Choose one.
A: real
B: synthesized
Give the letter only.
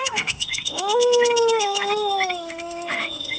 B